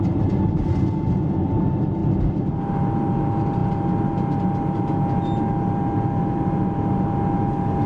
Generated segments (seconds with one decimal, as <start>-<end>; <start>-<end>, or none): none